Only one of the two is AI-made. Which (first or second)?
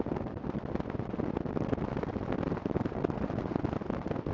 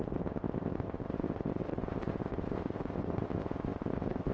second